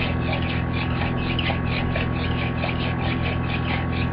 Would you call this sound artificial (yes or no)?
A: no